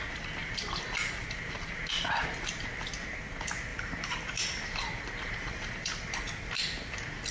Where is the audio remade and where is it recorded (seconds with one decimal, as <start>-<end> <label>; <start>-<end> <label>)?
0.0-0.4 recorded; 0.4-1.9 remade; 1.9-3.7 recorded; 3.7-5.7 remade; 5.7-7.3 recorded